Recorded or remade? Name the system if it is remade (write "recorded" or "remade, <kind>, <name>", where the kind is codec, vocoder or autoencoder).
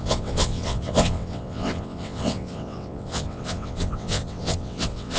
remade, vocoder, WaveNeXt